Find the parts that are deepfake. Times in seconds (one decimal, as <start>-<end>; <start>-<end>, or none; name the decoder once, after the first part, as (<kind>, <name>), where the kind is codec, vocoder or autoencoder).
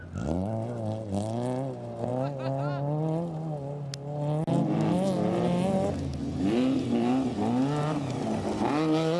none